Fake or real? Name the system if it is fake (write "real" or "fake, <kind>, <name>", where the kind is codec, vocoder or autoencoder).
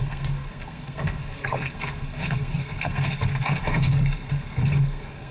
fake, codec, SNAC